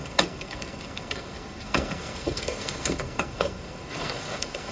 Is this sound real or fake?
fake